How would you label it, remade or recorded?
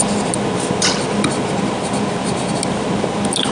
recorded